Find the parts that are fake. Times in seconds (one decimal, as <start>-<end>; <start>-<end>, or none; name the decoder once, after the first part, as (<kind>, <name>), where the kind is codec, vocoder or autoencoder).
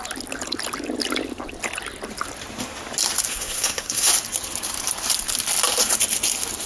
3.3-4.1 (codec, SNAC)